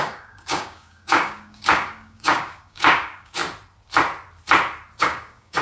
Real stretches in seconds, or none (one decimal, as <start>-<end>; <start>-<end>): 3.4-5.0